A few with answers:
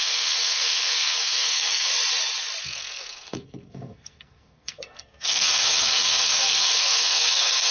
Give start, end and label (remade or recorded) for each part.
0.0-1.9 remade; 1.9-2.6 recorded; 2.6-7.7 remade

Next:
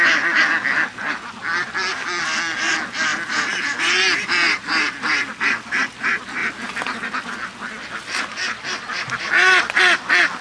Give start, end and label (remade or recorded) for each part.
0.0-10.4 recorded

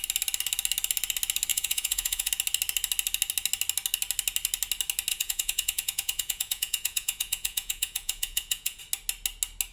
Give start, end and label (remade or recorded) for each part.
0.0-1.5 recorded; 1.5-2.3 remade; 2.3-5.1 recorded; 5.1-8.8 remade; 8.8-9.7 recorded

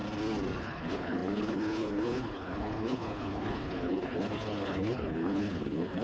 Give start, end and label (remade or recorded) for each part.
0.0-0.6 recorded; 0.6-6.0 remade

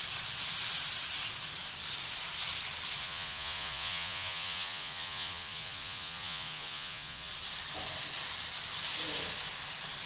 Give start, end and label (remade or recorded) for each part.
0.0-3.0 recorded; 3.0-7.3 remade; 7.3-10.1 recorded

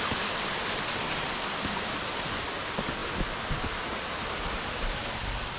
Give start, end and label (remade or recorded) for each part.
0.0-5.6 recorded